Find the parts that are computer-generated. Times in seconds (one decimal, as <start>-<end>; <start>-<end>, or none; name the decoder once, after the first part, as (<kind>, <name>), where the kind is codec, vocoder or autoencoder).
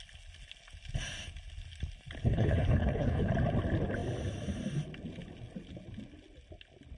2.2-3.3 (codec, HILCodec)